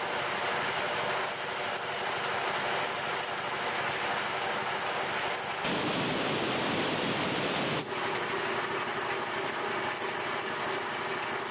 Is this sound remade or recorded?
recorded